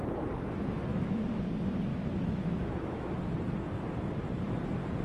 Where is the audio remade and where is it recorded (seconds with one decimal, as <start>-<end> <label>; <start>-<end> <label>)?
0.0-0.9 recorded; 0.9-1.4 remade; 1.4-1.9 recorded; 1.9-3.2 remade; 3.2-5.0 recorded